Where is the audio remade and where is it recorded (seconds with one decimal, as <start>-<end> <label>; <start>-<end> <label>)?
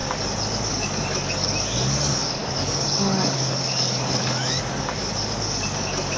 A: 0.0-0.7 recorded; 0.7-6.2 remade